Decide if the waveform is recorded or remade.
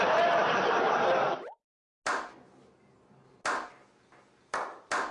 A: recorded